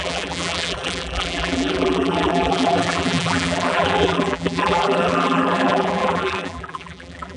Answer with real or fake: fake